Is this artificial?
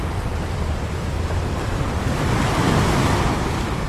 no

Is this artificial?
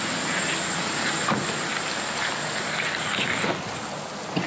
no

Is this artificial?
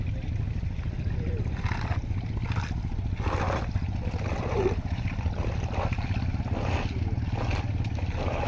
no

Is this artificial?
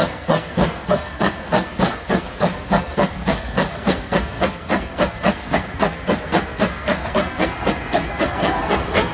yes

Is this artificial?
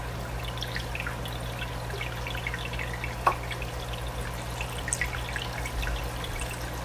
no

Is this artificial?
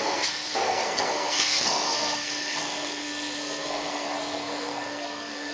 yes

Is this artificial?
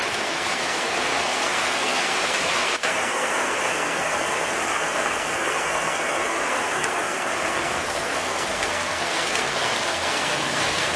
yes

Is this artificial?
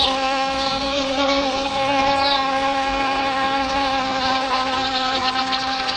yes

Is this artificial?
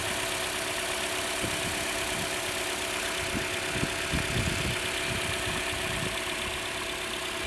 no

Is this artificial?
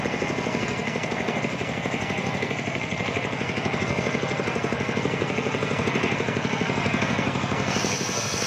yes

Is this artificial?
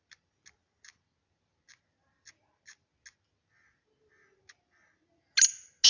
no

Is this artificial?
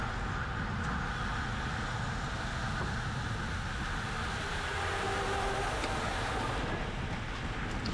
no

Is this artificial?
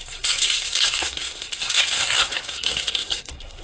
yes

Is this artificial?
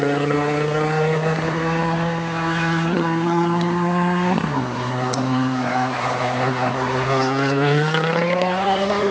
yes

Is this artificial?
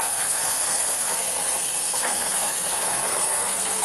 yes